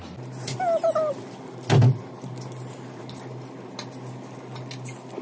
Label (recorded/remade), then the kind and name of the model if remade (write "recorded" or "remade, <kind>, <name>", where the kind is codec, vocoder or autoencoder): recorded